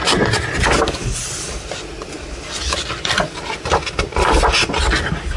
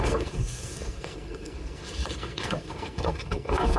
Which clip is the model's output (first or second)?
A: second